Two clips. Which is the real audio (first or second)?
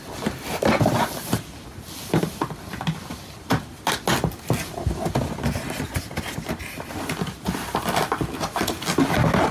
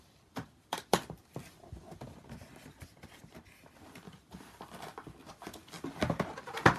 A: first